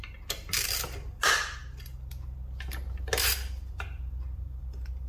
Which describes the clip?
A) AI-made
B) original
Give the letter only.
B